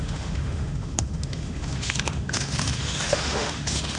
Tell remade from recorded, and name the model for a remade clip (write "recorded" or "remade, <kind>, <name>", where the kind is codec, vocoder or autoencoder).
remade, autoencoder, DAC-VAE